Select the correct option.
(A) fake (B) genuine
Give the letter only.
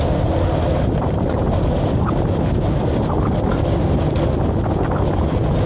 B